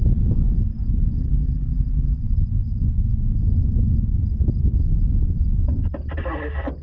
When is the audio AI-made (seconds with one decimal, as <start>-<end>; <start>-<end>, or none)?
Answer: 1.2-2.2